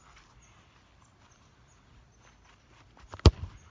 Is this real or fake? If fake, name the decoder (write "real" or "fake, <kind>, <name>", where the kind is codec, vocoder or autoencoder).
real